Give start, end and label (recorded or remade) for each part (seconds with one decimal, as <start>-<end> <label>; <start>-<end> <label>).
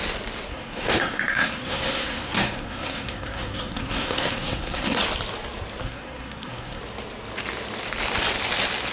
0.0-0.5 recorded; 0.5-5.0 remade; 5.0-5.8 recorded; 5.8-6.8 remade; 6.8-8.9 recorded